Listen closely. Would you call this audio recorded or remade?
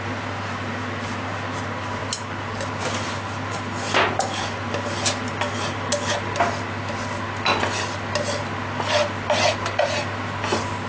recorded